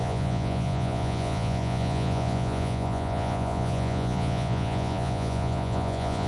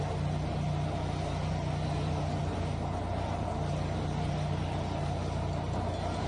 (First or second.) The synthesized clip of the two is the first